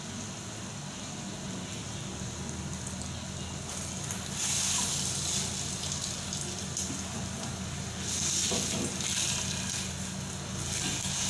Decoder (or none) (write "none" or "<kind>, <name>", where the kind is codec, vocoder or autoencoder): none